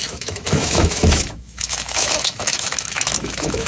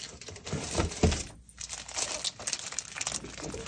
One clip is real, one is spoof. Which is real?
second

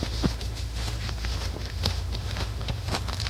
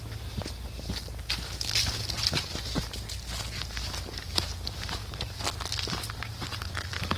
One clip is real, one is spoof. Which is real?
second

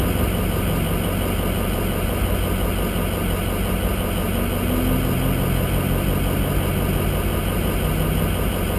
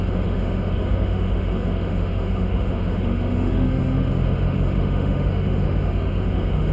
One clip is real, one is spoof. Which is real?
first